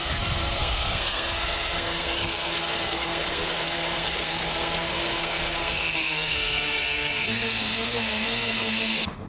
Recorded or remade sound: remade